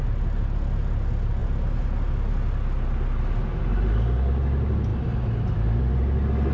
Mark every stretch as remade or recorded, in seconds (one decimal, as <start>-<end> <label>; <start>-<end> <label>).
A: 0.0-6.5 recorded

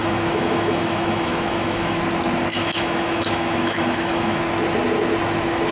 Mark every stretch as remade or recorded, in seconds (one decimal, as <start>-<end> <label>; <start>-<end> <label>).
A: 0.0-2.0 remade; 2.0-2.5 recorded; 2.5-4.4 remade; 4.4-5.7 recorded

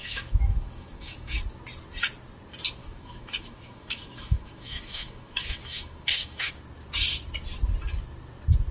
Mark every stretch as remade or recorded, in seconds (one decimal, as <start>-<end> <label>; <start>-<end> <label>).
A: 0.0-1.4 remade; 1.4-2.8 recorded; 2.8-6.5 remade; 6.5-8.7 recorded

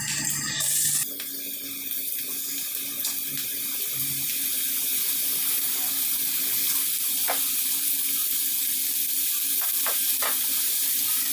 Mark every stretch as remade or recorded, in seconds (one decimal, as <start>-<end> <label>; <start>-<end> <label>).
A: 0.0-11.3 recorded

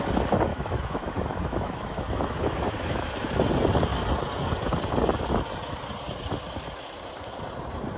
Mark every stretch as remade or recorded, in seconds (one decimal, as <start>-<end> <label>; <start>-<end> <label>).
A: 0.0-0.5 recorded; 0.5-3.1 remade; 3.1-8.0 recorded

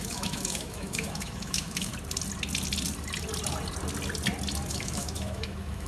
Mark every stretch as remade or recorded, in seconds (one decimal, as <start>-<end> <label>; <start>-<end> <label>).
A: 0.0-1.9 remade; 1.9-4.7 recorded; 4.7-5.9 remade

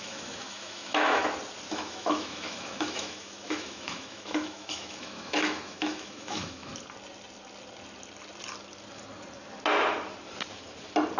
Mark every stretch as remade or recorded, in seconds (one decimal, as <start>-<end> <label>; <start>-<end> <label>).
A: 0.0-1.2 remade; 1.2-1.7 recorded; 1.7-6.7 remade; 6.7-11.2 recorded